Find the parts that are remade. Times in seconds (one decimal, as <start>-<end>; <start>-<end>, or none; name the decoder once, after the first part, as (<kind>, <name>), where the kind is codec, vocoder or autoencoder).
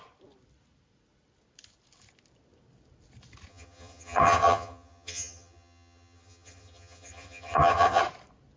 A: 3.5-8.0 (vocoder, HiFi-GAN)